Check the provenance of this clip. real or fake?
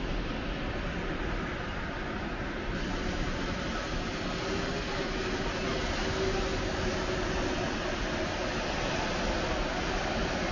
real